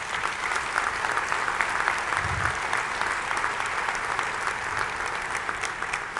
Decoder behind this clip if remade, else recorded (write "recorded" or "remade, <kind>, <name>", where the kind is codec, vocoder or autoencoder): recorded